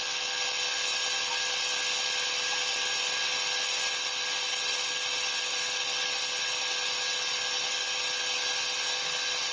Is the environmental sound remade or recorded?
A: recorded